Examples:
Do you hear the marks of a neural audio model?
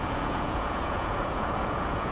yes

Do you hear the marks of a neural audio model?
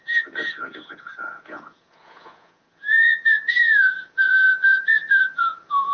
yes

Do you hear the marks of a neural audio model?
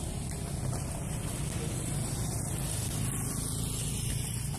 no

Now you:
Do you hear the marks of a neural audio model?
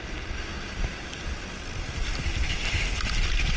no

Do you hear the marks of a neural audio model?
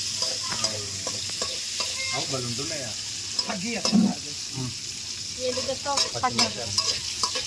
no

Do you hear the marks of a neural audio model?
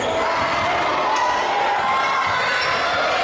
no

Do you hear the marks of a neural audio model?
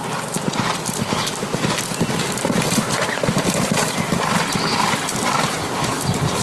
no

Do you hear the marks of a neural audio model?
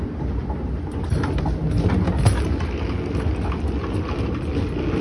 no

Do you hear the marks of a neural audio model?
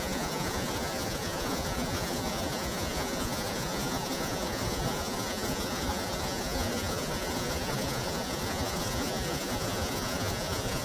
yes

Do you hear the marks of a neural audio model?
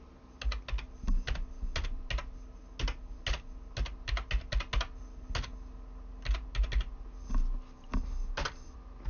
no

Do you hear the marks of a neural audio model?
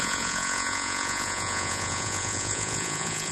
yes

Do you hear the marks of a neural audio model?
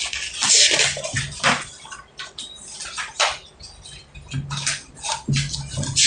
no